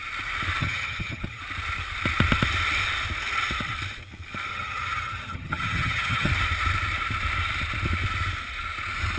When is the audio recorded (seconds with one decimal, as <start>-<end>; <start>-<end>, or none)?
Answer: 0.0-0.6; 1.4-4.5; 6.3-9.2